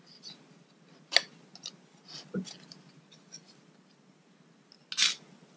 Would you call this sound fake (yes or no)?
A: no